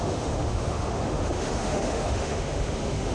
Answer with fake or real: fake